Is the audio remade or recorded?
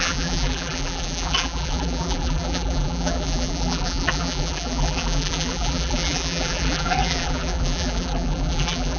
remade